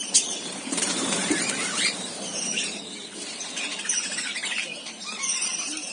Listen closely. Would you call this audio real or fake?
fake